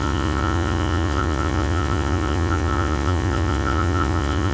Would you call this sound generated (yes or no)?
yes